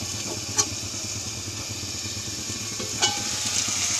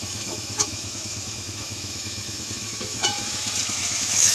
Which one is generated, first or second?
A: second